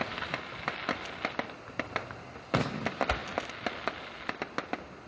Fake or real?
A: real